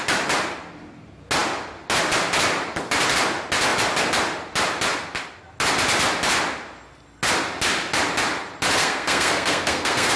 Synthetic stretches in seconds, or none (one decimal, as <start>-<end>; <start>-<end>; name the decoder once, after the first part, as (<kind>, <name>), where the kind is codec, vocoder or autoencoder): 8.8-10.2 (codec, SNAC)